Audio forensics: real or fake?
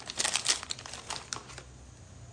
real